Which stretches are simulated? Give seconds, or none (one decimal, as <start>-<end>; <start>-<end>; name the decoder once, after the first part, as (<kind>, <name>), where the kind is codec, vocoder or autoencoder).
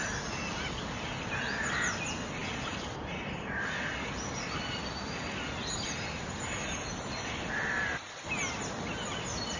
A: none